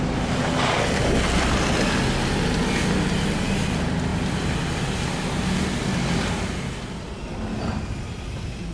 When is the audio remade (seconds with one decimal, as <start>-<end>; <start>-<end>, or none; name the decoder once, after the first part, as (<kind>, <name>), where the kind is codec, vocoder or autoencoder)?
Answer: none